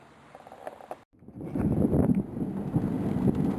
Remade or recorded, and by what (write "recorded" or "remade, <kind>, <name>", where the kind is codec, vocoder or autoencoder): recorded